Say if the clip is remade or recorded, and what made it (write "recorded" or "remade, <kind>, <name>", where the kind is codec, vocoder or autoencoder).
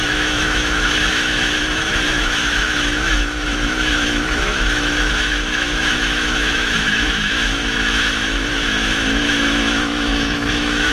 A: remade, autoencoder, DAC-VAE